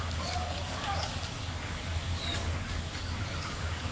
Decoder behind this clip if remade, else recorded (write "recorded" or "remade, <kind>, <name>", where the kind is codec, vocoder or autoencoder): remade, codec, DAC